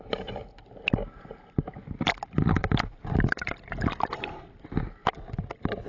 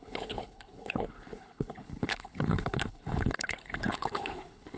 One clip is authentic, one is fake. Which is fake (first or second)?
second